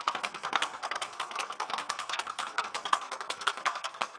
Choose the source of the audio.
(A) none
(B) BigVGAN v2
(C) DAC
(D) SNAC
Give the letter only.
D